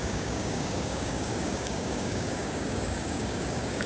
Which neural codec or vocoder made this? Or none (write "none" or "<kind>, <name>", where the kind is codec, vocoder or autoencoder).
codec, DAC